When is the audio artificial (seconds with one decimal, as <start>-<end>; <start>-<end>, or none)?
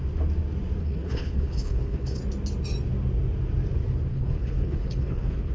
0.8-2.2; 4.1-5.5